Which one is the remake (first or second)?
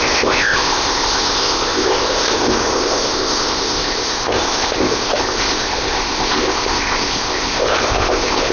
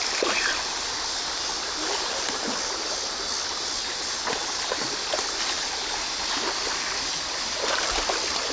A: first